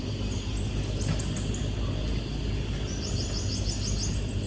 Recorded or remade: recorded